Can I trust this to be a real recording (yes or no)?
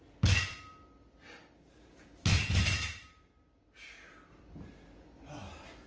yes